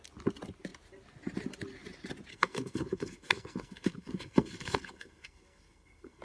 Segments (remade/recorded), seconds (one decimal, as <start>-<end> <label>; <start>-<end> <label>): 0.0-2.3 recorded; 2.3-6.2 remade